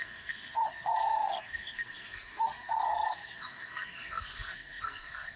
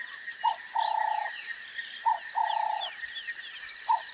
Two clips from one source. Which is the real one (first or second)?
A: second